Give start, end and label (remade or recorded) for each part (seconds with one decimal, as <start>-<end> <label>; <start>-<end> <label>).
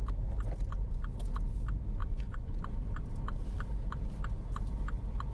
0.0-2.0 recorded; 2.0-2.6 remade; 2.6-5.3 recorded